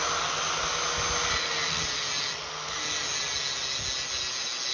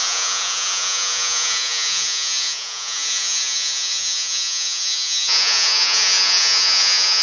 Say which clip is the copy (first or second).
second